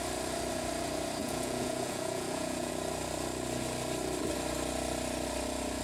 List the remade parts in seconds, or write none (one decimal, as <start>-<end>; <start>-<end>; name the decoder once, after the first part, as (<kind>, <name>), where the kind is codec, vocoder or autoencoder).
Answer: 1.2-2.7 (vocoder, Vocos)

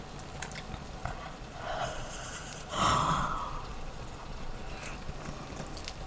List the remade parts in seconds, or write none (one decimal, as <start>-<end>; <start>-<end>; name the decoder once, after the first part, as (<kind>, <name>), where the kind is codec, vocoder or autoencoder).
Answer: 1.0-4.7 (vocoder, Vocos)

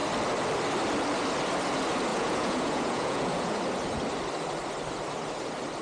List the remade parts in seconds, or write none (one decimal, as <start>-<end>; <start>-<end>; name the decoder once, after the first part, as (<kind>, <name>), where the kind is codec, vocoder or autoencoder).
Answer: 2.1-3.6 (vocoder, Vocos)

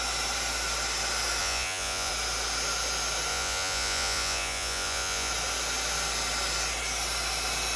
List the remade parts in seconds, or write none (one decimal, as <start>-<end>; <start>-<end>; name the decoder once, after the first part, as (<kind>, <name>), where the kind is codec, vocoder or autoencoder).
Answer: 1.4-2.1 (vocoder, Vocos); 3.3-5.3